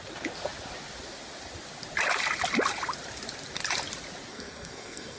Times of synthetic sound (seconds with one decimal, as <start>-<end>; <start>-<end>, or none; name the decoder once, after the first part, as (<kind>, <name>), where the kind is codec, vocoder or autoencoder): 4.3-5.2 (codec, SNAC)